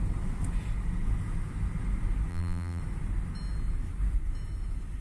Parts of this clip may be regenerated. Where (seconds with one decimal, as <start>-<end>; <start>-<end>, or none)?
2.3-2.8